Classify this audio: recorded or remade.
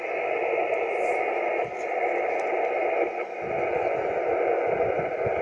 recorded